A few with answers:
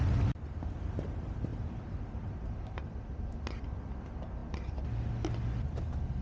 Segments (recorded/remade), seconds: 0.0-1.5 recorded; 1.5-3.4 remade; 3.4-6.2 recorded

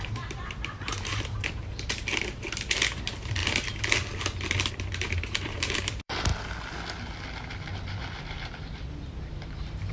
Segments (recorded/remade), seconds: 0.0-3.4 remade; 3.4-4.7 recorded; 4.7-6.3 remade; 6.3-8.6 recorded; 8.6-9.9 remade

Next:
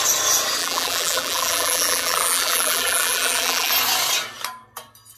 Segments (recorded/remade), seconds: 0.0-0.6 recorded; 0.6-3.7 remade; 3.7-5.2 recorded

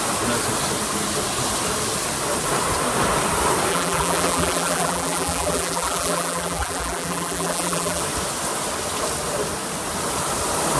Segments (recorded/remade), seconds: 0.0-3.7 recorded; 3.7-8.0 remade; 8.0-10.8 recorded

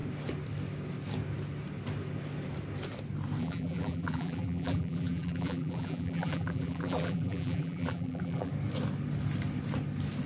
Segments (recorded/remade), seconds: 0.0-3.4 recorded; 3.4-8.5 remade; 8.5-10.3 recorded